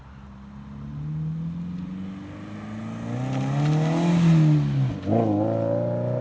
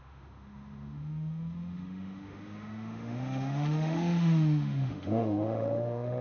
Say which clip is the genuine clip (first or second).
first